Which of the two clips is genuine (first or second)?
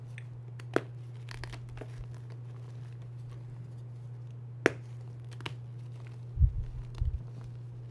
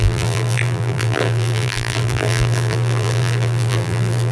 first